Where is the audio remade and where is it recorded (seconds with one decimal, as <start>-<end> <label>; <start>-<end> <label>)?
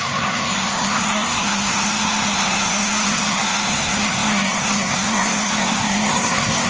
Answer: 0.0-6.7 remade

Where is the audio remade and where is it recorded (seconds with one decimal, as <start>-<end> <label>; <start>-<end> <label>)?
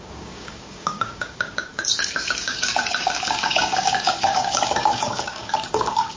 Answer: 0.0-6.2 remade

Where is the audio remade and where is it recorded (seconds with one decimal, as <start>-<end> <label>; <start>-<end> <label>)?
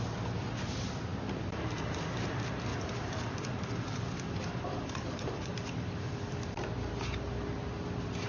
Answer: 0.0-1.1 recorded; 1.1-2.1 remade; 2.1-2.7 recorded; 2.7-6.9 remade; 6.9-8.3 recorded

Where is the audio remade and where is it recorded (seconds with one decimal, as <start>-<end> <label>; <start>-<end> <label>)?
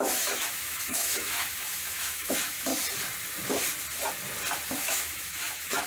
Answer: 0.0-2.7 remade; 2.7-4.7 recorded; 4.7-5.9 remade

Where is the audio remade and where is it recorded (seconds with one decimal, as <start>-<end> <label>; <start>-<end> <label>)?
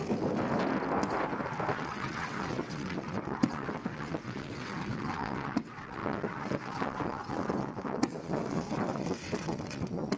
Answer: 0.0-1.7 recorded; 1.7-10.2 remade